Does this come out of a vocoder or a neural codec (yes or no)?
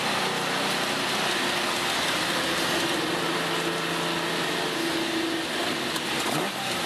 no